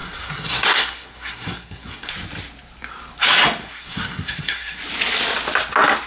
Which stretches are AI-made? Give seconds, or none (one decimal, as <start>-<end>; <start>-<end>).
0.0-2.1; 3.6-4.8